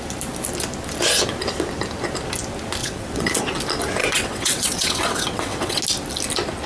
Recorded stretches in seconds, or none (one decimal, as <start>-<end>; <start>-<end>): 0.0-2.8; 3.4-4.0; 5.8-6.7